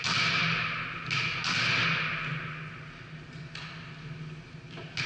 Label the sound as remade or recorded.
recorded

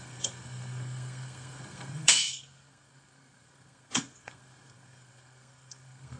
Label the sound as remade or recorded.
remade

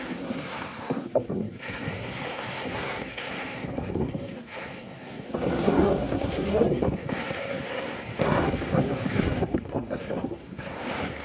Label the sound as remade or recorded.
remade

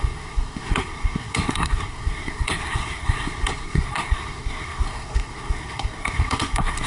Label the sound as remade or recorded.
remade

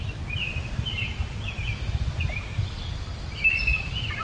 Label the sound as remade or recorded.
recorded